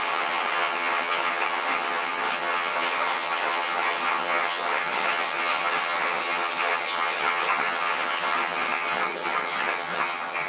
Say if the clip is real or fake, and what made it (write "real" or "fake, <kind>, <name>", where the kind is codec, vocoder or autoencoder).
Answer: fake, vocoder, HiFi-GAN